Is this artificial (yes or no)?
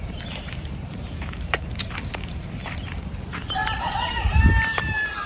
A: yes